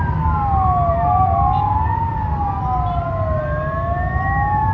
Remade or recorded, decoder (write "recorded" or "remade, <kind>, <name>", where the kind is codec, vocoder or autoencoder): recorded